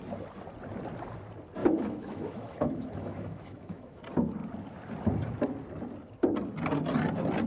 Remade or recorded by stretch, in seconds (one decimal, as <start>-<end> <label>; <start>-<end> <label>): 0.0-1.6 recorded; 1.6-4.0 remade; 4.0-7.5 recorded